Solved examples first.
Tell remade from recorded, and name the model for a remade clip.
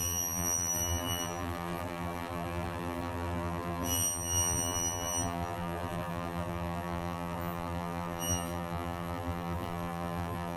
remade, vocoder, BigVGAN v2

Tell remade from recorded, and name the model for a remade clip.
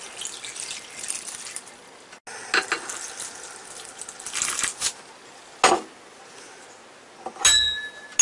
recorded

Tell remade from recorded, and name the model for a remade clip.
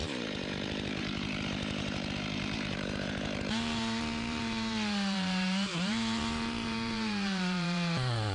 remade, vocoder, BigVGAN v2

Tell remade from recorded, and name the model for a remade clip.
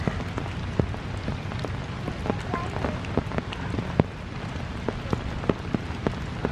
recorded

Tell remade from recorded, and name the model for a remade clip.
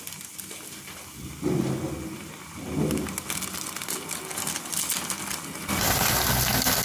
recorded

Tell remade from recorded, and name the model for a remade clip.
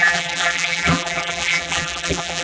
remade, vocoder, BigVGAN v2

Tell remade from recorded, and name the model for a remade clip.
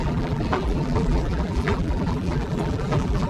remade, vocoder, BigVGAN v2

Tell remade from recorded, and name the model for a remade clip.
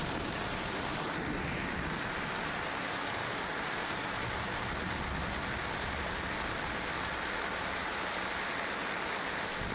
recorded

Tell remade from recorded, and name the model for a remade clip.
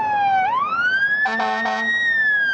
recorded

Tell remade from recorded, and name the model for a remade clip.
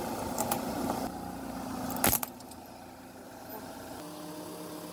recorded